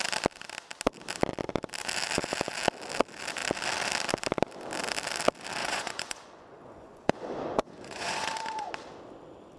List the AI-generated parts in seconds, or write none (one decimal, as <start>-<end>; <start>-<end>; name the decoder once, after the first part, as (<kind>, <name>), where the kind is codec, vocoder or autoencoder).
5.6-8.7 (vocoder, Vocos)